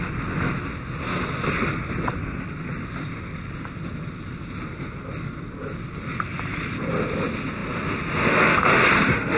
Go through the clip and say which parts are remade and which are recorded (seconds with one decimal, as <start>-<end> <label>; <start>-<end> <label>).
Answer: 0.0-9.4 recorded